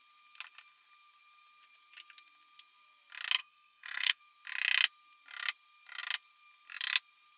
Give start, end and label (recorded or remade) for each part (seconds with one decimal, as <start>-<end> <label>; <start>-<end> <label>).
0.0-3.4 recorded; 3.4-4.2 remade; 4.2-7.4 recorded